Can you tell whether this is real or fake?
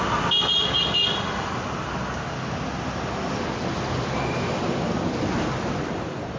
real